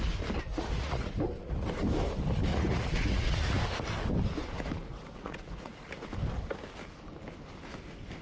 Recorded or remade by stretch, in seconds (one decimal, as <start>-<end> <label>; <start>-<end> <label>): 0.0-0.5 recorded; 0.5-1.1 remade; 1.1-2.5 recorded; 2.5-3.6 remade; 3.6-4.9 recorded; 4.9-5.8 remade; 5.8-8.2 recorded